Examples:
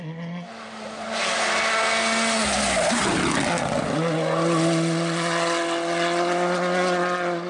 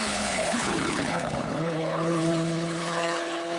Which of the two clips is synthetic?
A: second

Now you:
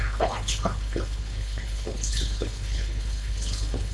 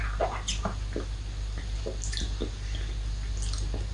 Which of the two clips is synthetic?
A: first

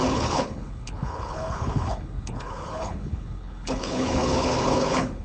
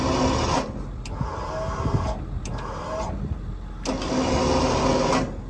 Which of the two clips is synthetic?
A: first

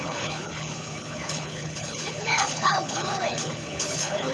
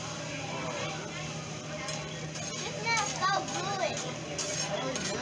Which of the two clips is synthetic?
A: first